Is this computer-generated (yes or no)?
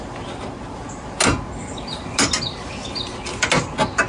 no